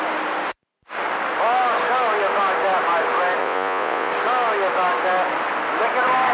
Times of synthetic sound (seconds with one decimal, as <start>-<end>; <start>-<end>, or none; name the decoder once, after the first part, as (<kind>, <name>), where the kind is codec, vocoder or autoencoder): 3.4-4.1 (vocoder, Vocos)